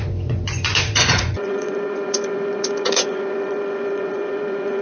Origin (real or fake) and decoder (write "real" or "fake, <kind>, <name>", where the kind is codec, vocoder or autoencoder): fake, vocoder, Vocos